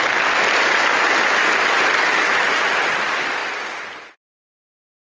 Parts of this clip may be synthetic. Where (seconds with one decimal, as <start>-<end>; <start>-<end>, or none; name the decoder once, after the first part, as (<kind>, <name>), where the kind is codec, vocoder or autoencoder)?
none

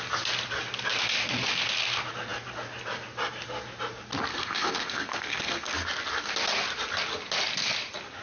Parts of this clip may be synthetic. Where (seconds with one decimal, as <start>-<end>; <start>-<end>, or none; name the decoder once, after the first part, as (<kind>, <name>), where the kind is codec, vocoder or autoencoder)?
4.3-5.7 (codec, SNAC)

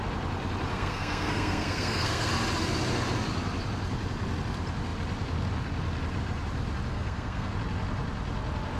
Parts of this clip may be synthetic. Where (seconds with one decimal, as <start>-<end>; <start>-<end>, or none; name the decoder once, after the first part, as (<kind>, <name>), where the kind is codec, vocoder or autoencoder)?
0.7-2.3 (codec, SNAC); 6.9-7.5

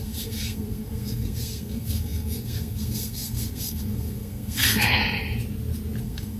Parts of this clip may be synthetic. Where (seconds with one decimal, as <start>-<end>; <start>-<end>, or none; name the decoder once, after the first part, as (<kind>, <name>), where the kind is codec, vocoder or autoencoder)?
0.0-5.0 (codec, SNAC); 6.0-6.4

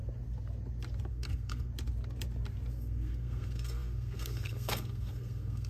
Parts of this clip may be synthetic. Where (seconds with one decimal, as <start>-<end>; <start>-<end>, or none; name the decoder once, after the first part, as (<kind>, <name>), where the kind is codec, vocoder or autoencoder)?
1.1-1.7 (codec, SNAC); 2.7-5.7

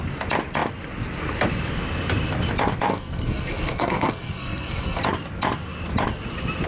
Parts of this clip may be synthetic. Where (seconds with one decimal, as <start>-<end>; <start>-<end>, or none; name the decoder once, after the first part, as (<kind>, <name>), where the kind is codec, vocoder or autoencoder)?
2.9-5.0 (codec, SNAC)

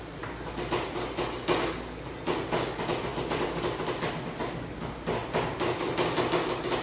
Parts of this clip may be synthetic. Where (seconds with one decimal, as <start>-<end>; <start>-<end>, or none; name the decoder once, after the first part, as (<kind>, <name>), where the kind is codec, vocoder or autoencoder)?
none

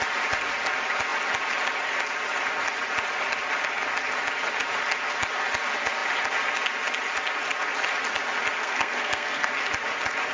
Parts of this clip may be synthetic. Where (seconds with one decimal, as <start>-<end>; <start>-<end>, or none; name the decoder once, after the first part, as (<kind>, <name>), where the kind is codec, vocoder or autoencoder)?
8.6-9.5 (codec, SNAC)